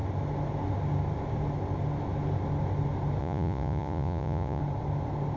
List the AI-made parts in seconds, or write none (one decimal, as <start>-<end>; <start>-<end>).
3.2-4.6